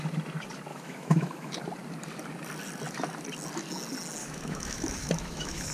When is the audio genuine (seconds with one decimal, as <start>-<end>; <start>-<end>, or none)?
0.0-0.7; 1.5-4.2